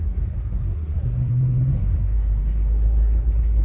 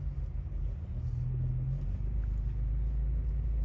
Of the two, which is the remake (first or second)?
first